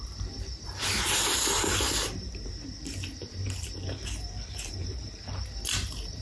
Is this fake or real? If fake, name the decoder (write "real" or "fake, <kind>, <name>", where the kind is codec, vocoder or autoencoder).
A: fake, vocoder, BigVGAN v2